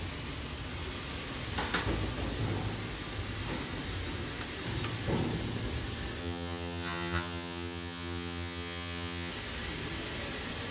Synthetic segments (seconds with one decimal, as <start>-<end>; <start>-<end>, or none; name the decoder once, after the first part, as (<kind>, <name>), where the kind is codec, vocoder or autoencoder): 6.2-9.3 (vocoder, HiFi-GAN)